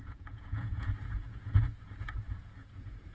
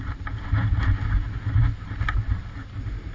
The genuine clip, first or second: second